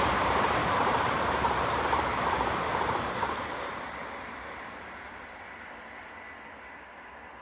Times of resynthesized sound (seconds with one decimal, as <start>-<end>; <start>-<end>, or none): 0.6-4.9